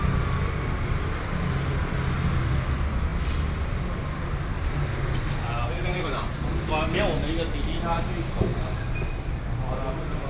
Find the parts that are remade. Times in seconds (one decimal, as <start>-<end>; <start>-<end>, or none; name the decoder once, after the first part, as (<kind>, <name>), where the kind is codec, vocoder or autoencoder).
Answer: none